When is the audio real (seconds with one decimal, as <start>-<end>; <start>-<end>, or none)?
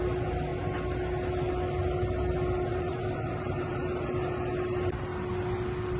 0.0-2.7; 3.7-6.0